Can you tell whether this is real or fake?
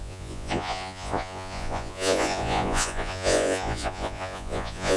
fake